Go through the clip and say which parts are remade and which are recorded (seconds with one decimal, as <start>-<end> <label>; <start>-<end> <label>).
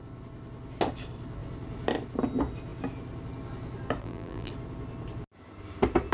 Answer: 0.0-4.0 recorded; 4.0-4.5 remade; 4.5-6.1 recorded